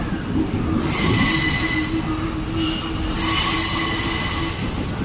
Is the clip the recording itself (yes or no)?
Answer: yes